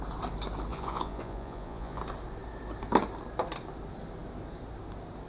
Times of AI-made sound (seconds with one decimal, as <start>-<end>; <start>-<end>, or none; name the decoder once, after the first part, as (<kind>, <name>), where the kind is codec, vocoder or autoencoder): 0.7-2.0 (vocoder, Vocos)